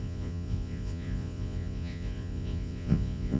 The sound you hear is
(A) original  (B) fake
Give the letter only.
B